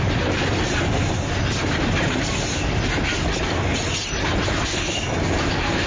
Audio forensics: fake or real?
real